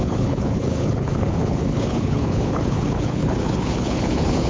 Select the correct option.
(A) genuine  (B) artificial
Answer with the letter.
B